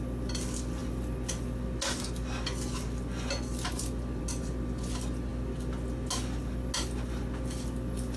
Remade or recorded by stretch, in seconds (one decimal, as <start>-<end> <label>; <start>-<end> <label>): 0.0-8.2 recorded